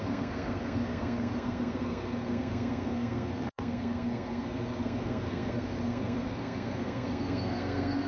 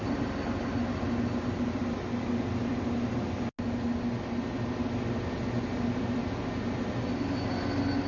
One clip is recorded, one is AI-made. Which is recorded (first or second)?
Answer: second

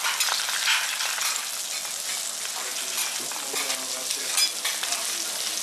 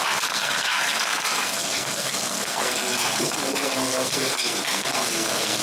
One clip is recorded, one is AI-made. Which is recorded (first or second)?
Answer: first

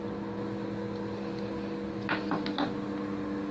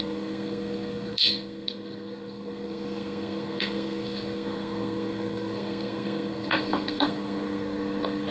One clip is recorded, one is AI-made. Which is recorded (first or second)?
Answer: first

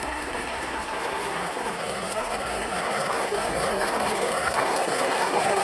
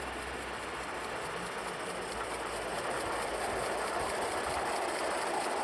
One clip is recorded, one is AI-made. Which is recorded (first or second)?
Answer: second